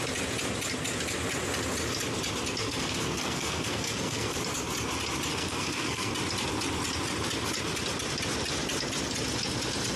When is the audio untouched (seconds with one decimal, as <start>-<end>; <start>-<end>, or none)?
0.0-2.6; 4.4-5.3; 6.1-10.0